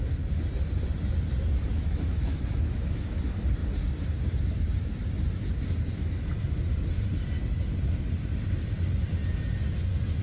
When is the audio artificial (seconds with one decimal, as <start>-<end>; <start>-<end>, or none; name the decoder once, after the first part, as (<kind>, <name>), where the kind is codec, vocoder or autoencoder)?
1.7-3.1 (autoencoder, DAC-VAE)